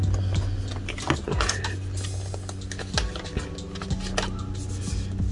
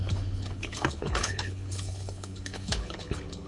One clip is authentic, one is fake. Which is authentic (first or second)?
first